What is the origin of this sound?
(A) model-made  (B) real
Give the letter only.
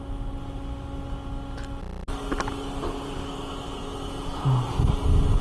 B